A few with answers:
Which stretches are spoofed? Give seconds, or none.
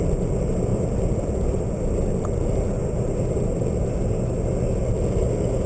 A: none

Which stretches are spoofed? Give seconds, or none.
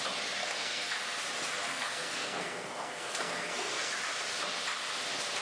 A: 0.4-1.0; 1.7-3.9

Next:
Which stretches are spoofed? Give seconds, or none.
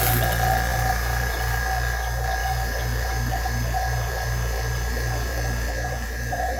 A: 0.7-1.6; 2.4-6.6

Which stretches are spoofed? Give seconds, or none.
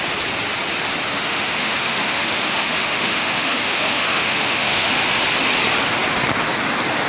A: 1.1-4.9